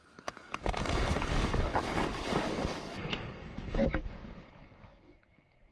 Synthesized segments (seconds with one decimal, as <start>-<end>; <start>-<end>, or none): 0.0-5.7